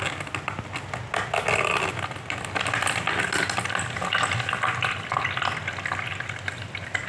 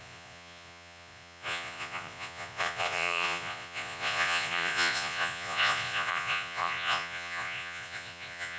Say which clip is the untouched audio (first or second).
first